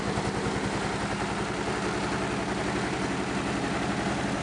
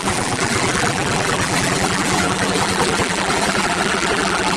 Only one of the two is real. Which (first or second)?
first